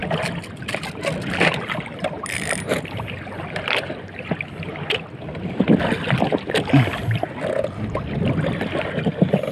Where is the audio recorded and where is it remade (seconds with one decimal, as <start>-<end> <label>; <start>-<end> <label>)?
0.0-9.5 recorded